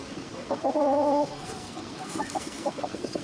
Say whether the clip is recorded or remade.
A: remade